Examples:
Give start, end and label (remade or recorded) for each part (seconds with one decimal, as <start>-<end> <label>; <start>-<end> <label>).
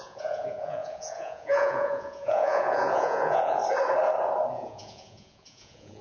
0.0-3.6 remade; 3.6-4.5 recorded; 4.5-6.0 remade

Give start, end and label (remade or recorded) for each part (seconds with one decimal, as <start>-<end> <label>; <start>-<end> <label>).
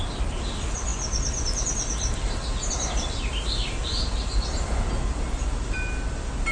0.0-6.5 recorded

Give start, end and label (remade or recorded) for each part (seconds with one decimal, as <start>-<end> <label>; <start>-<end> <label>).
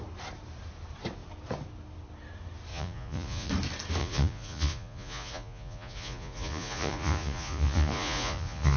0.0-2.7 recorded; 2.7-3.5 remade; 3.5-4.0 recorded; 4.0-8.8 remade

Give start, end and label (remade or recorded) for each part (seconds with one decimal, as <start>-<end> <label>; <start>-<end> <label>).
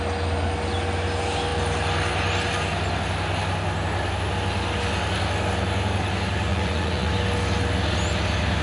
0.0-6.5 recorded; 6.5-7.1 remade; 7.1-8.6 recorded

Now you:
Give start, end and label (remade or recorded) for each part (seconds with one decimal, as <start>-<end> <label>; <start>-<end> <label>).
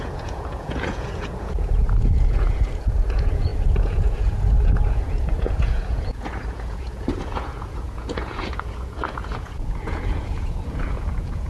0.0-11.5 remade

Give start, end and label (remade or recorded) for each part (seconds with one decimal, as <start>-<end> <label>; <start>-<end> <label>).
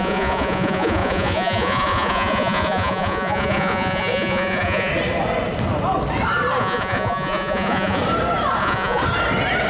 0.0-4.9 remade; 4.9-6.6 recorded; 6.6-8.0 remade; 8.0-8.6 recorded; 8.6-9.0 remade; 9.0-9.7 recorded